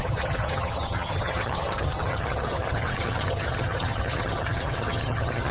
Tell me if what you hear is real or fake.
fake